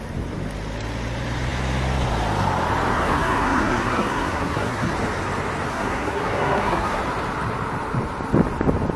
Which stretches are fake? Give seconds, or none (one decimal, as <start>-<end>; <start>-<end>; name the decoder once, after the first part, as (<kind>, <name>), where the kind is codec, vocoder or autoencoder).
2.9-4.9 (codec, SNAC); 5.7-7.0